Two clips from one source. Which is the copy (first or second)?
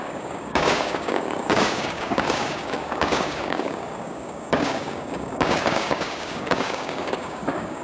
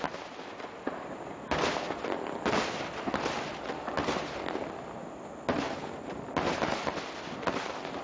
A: first